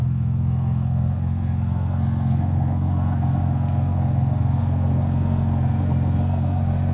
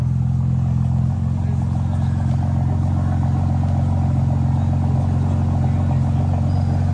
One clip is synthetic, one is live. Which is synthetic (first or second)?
first